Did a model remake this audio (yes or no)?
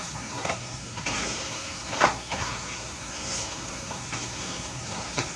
yes